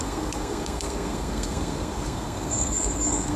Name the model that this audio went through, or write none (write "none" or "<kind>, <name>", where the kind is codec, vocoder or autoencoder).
codec, SNAC